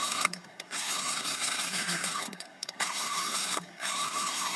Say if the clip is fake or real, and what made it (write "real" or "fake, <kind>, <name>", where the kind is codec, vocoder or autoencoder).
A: fake, codec, SNAC